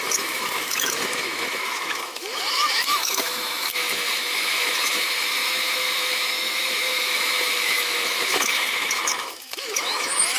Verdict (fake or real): fake